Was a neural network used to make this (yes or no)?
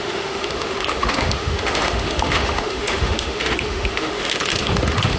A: yes